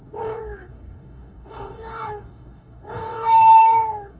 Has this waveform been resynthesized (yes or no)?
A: yes